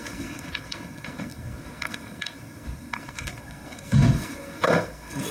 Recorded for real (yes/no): no